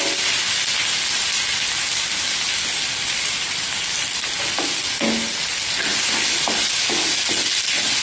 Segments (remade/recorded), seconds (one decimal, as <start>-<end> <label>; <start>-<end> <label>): 0.0-8.0 recorded